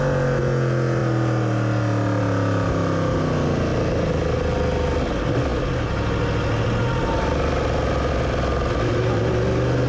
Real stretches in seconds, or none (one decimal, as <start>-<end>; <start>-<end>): 0.0-9.9